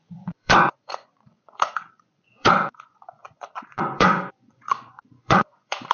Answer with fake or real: fake